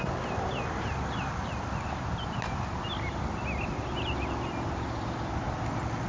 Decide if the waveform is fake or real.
real